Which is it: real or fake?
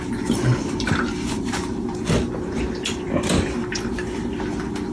real